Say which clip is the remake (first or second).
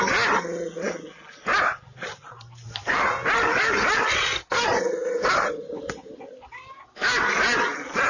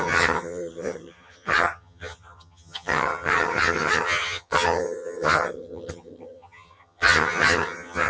second